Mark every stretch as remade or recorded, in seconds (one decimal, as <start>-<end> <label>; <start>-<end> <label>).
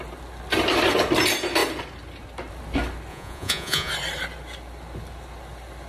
0.0-3.1 recorded; 3.1-3.9 remade; 3.9-5.9 recorded